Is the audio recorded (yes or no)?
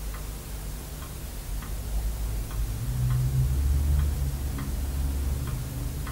yes